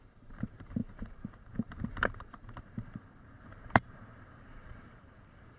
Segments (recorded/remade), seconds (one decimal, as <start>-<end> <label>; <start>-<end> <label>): 0.0-5.6 remade